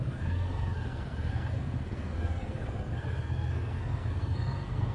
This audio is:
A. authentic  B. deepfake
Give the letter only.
B